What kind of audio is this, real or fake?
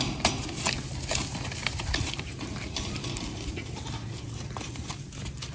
real